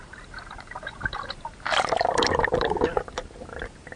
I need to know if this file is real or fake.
fake